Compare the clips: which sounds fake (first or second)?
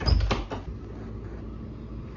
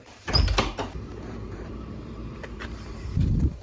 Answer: second